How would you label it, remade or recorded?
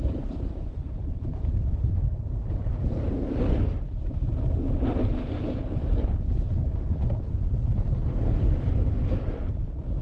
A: recorded